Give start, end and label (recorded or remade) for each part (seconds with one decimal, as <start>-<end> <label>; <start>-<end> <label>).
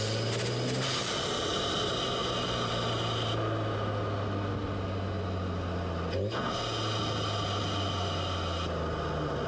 0.0-9.5 recorded